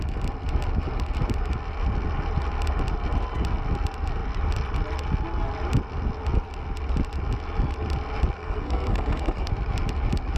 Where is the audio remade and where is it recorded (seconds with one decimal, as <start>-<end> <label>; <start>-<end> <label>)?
0.0-8.4 recorded; 8.4-9.5 remade; 9.5-10.4 recorded